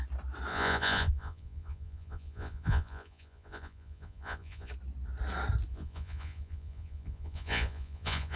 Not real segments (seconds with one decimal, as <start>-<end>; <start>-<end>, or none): 0.5-4.7; 5.7-8.4